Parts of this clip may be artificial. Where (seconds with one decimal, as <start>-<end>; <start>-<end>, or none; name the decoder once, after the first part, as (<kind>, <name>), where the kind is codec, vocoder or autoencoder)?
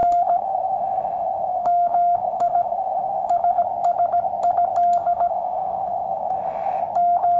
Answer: 0.0-3.6 (autoencoder, DAC-VAE); 5.0-6.8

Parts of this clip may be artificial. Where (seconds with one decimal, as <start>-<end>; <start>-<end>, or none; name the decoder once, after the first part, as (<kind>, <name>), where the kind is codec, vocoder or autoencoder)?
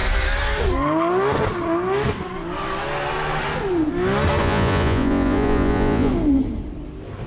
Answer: 4.4-6.1 (vocoder, Vocos)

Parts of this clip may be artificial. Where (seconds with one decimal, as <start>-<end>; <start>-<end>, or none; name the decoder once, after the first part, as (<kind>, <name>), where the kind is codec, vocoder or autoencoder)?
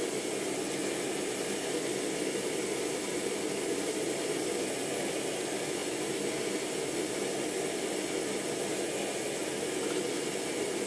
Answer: none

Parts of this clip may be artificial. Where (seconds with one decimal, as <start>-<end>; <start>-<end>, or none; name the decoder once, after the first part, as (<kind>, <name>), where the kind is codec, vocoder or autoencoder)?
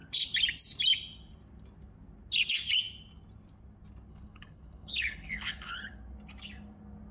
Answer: 4.1-6.0 (codec, HILCodec)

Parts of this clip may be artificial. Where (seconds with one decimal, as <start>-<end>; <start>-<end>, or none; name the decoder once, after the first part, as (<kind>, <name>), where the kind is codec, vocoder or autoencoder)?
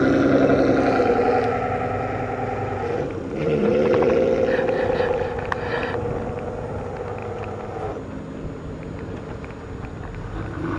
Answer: 3.4-4.1 (vocoder, Vocos)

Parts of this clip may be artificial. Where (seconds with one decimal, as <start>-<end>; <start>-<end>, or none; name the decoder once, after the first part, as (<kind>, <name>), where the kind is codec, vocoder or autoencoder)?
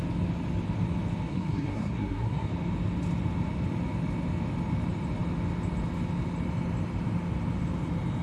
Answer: 1.3-2.5 (codec, SNAC)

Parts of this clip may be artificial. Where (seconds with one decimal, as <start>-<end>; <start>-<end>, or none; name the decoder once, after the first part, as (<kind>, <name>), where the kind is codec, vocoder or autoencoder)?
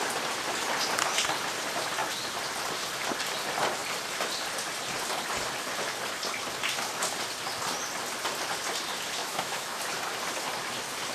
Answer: 9.2-9.8 (autoencoder, DAC-VAE)